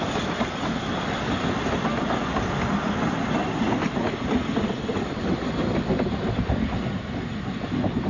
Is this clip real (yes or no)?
yes